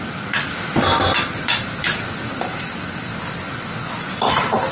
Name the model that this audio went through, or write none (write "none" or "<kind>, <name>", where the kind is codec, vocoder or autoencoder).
none